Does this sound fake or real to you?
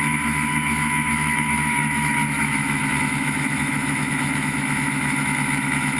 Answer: fake